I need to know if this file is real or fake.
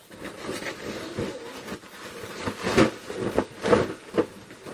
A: real